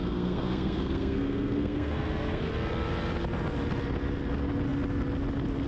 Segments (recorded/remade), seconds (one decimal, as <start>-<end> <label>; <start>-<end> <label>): 0.0-2.5 remade; 2.5-5.7 recorded